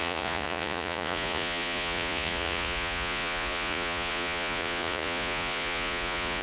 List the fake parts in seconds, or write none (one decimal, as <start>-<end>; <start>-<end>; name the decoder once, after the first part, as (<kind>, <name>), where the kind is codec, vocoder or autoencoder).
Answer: 0.0-6.4 (vocoder, Vocos)